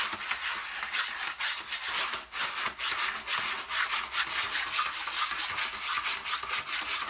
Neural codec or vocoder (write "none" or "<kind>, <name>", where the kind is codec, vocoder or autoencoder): none